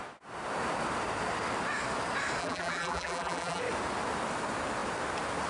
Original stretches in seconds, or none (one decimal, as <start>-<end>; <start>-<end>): 0.0-2.4; 3.6-5.5